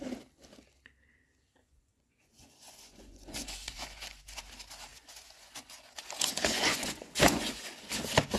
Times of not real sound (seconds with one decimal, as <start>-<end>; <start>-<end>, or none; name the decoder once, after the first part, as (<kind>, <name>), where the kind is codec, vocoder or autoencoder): 1.6-4.4 (vocoder, Vocos); 4.9-7.9